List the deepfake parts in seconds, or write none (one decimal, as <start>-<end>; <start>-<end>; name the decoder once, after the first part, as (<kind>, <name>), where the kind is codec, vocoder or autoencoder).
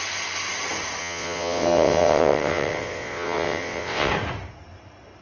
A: 1.0-4.1 (vocoder, WaveNeXt)